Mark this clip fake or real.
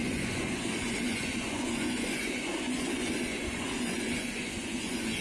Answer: fake